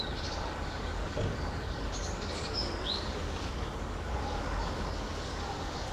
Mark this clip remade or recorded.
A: remade